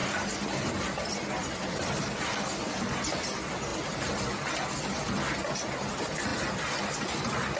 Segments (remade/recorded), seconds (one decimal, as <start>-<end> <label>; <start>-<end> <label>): 0.0-7.6 recorded